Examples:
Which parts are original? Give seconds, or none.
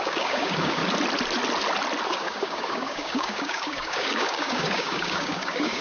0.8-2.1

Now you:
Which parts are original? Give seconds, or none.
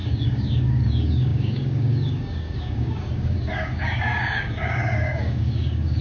none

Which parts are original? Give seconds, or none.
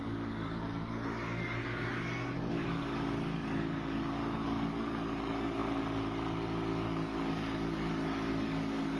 5.6-6.7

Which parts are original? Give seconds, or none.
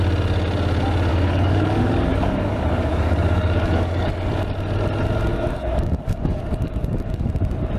0.0-1.1; 4.1-5.3; 7.3-7.8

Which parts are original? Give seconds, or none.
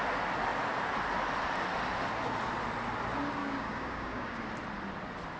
0.0-3.4; 4.4-5.4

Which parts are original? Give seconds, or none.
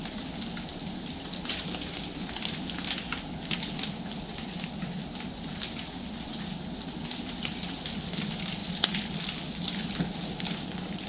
0.0-11.1